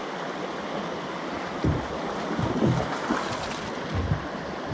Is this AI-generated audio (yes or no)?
no